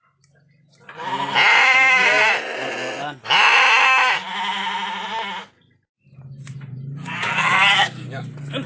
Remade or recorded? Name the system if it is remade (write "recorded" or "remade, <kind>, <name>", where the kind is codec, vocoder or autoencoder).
recorded